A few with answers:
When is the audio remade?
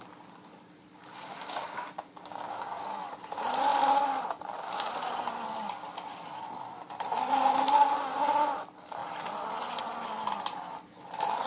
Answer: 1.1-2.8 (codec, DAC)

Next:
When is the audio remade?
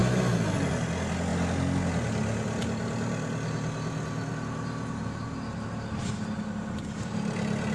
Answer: none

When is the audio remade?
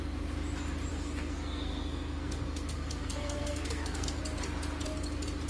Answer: 0.9-4.2 (codec, SNAC)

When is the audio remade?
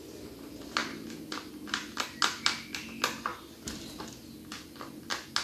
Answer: 3.3-3.8 (vocoder, BigVGAN v2)